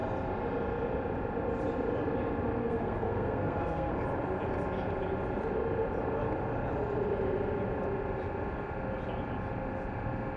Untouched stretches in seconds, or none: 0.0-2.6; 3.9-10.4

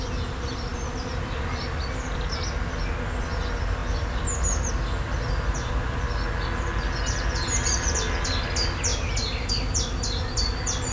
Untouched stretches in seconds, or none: 0.0-10.9

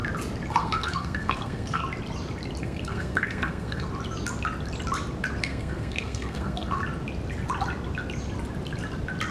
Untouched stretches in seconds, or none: 0.0-0.5; 1.8-2.6; 3.9-5.4; 6.8-9.3

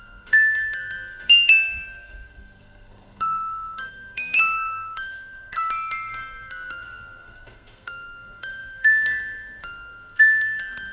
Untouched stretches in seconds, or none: none

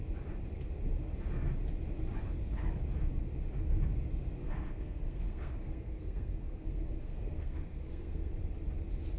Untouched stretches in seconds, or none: 0.0-4.4; 8.3-9.2

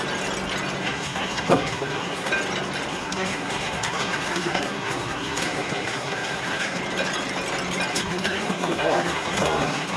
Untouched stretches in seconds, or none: 0.0-0.8; 2.3-2.9; 6.8-7.9

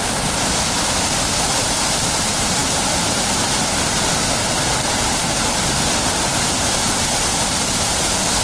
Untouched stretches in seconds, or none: 0.0-8.4

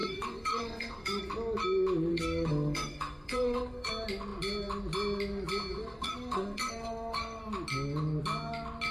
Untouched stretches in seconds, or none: 1.2-2.1; 3.9-5.8; 7.4-8.9